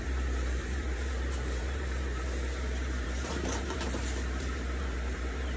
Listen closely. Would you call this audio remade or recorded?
remade